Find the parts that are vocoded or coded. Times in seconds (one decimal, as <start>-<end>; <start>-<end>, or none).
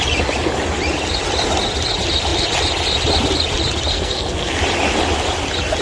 3.9-4.6